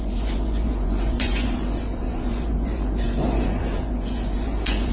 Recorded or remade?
remade